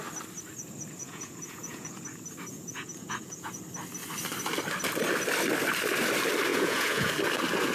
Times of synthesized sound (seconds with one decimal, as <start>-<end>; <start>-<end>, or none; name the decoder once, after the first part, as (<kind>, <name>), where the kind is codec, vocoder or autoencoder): 1.0-2.0 (vocoder, Vocos); 2.5-3.6; 6.5-7.1